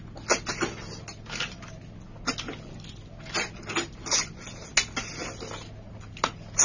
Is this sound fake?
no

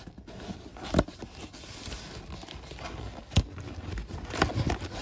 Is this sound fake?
no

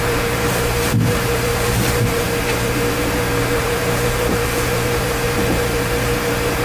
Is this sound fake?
yes